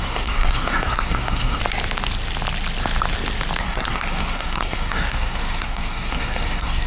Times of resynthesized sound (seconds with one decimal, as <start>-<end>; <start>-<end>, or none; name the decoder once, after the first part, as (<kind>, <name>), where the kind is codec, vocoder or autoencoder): 0.0-1.6 (codec, SNAC); 3.6-6.9